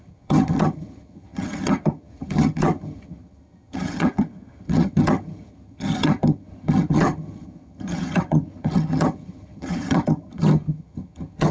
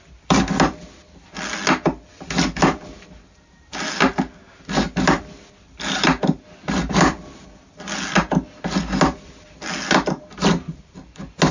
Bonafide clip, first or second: second